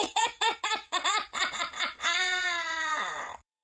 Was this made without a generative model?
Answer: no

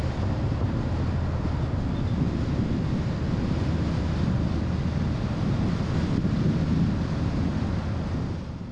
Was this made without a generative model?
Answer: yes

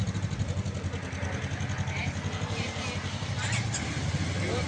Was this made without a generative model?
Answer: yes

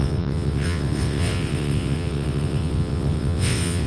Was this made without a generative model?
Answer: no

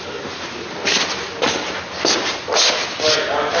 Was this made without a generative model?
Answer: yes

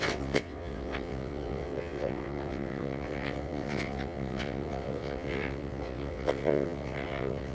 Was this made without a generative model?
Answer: no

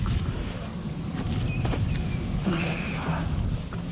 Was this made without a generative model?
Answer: yes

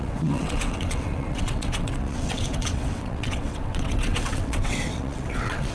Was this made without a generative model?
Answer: no